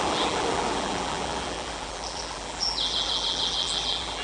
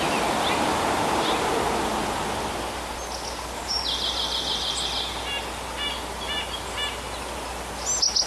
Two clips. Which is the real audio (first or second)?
second